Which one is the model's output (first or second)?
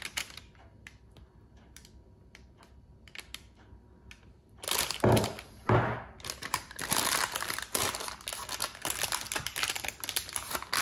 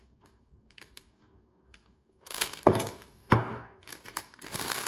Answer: second